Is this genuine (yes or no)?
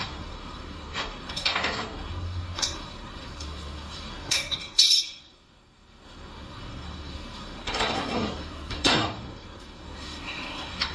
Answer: no